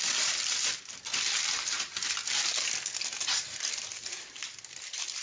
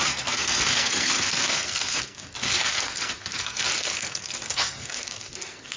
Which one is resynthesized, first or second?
second